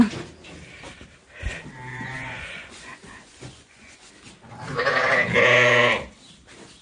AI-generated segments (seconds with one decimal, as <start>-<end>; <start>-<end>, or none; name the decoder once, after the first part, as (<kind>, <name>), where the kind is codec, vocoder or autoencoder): 1.9-4.1 (vocoder, Vocos)